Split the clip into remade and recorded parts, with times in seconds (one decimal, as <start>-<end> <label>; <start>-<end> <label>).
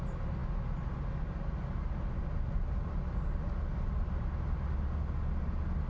0.0-5.9 recorded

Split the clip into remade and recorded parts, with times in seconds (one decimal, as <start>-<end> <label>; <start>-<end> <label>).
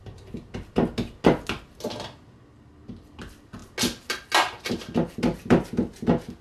0.0-6.4 recorded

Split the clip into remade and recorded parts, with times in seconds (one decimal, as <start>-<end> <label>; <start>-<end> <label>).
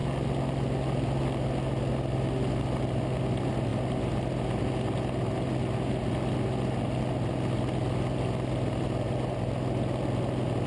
0.0-10.7 recorded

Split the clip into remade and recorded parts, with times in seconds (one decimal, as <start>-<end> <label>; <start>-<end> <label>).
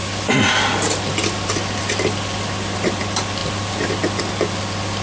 0.0-5.0 recorded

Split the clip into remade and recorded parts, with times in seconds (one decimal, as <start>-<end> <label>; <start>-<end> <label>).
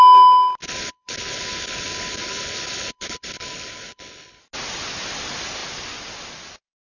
0.0-0.6 recorded; 0.6-4.4 remade; 4.4-6.9 recorded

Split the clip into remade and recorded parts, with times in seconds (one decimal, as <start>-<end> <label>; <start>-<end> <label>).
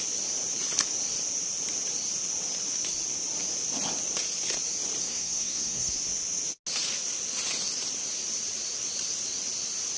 0.0-5.0 recorded; 5.0-5.9 remade; 5.9-10.0 recorded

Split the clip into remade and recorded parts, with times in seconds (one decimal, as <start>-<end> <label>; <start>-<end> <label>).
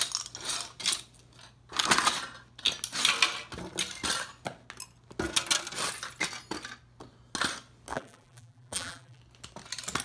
0.0-7.9 recorded; 7.9-9.2 remade; 9.2-10.0 recorded